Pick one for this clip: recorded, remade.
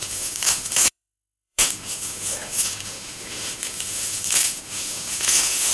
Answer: remade